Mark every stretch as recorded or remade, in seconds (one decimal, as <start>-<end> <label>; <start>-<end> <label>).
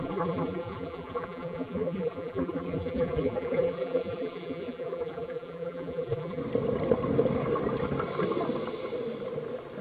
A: 0.0-6.4 remade; 6.4-9.8 recorded